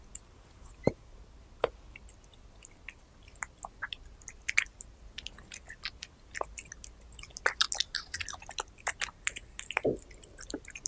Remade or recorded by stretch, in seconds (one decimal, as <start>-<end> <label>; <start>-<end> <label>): 0.0-10.9 recorded